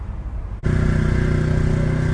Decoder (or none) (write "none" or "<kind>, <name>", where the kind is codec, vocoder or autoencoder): none